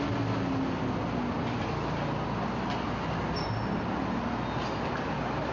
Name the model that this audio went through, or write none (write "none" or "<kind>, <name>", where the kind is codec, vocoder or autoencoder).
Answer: none